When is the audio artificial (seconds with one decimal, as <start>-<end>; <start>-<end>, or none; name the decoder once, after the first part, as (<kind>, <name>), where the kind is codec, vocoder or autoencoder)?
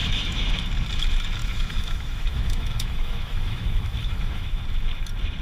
0.0-0.5 (autoencoder, DAC-VAE); 1.4-4.6